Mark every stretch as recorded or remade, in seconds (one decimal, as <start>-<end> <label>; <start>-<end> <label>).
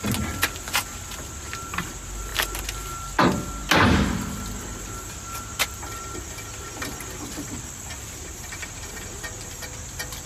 0.0-10.3 recorded